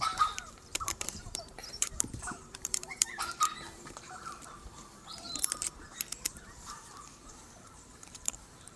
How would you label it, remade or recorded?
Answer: remade